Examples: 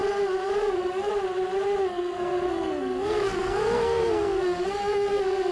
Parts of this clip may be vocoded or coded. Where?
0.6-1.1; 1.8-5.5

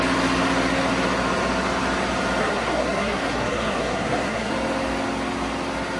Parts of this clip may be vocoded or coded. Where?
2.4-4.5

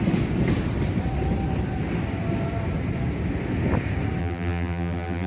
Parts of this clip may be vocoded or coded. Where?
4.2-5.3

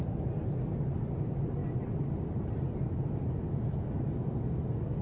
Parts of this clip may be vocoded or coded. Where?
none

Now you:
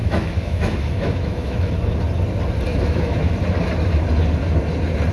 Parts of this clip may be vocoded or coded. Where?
0.0-1.7; 2.7-3.3

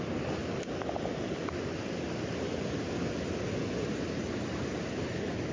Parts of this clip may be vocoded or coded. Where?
0.4-2.5

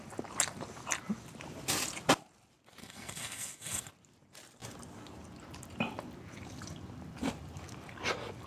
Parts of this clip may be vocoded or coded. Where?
2.8-3.9

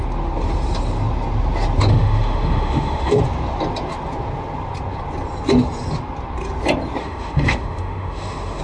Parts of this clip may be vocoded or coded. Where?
1.9-3.2; 7.0-8.6